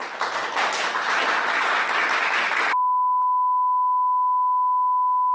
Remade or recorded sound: recorded